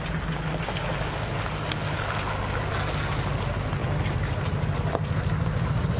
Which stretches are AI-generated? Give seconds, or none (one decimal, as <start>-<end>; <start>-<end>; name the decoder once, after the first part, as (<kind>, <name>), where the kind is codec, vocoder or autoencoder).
none